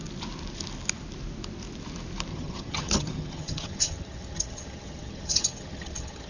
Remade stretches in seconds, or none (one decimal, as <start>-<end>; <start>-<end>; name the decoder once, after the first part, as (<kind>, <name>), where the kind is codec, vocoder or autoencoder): 2.3-6.3 (vocoder, HiFi-GAN)